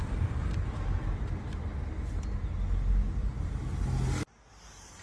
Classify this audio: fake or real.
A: real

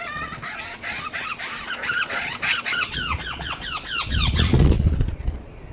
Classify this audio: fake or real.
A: fake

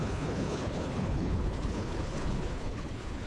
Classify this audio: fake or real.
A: fake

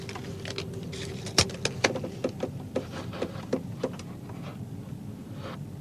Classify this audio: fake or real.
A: real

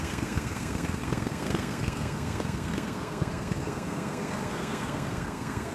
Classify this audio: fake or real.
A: fake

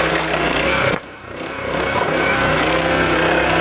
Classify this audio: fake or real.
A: fake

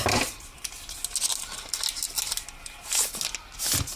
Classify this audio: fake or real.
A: real